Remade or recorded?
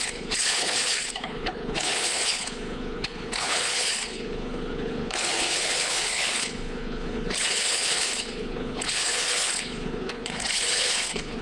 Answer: remade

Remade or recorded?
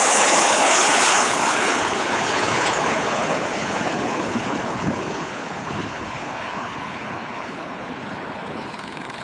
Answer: remade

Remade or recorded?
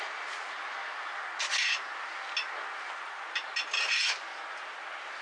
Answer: recorded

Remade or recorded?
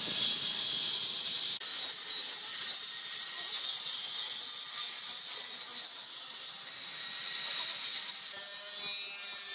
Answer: recorded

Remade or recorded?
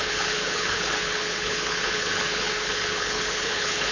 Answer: remade